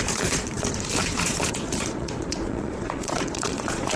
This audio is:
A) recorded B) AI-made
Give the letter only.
B